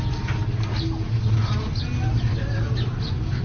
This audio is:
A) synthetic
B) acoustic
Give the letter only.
B